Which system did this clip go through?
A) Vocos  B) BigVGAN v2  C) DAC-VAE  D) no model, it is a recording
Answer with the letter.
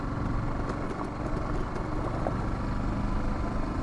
D